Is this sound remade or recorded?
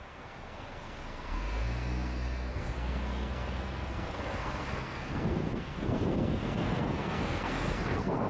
remade